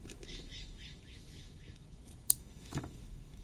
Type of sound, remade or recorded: remade